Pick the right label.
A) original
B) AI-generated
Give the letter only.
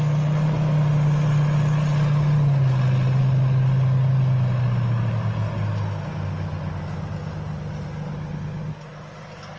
A